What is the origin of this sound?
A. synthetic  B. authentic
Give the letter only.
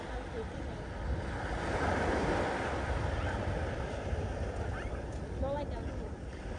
B